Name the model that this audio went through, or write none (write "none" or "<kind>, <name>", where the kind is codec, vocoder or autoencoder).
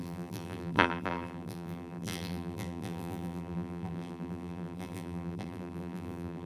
vocoder, BigVGAN v2